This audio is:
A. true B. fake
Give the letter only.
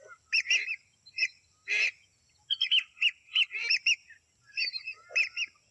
A